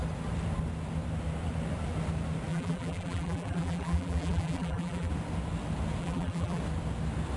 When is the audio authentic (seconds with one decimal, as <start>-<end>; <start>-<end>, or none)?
0.0-2.5; 5.1-6.0; 6.6-7.4